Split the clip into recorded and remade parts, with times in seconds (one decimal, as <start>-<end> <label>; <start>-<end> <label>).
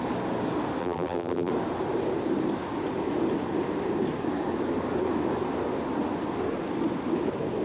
0.0-0.8 recorded; 0.8-1.5 remade; 1.5-7.6 recorded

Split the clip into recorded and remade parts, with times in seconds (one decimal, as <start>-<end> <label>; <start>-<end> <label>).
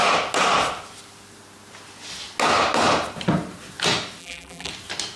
0.0-4.2 recorded; 4.2-4.7 remade; 4.7-5.2 recorded